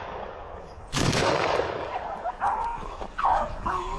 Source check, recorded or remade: remade